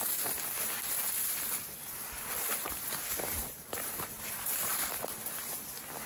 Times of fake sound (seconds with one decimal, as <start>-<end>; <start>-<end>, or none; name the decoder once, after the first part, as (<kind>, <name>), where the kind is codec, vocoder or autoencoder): 2.5-4.6 (vocoder, BigVGAN v2)